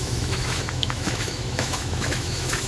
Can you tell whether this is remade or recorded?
remade